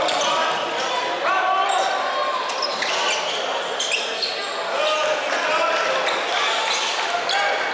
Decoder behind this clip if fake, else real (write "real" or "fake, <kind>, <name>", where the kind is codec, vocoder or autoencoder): real